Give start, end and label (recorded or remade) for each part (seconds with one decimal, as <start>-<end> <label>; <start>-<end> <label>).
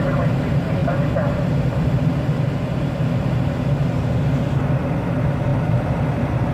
0.0-5.5 recorded; 5.5-6.5 remade